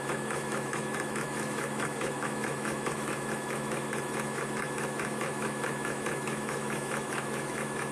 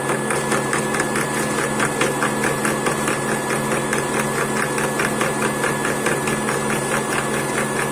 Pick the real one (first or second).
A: second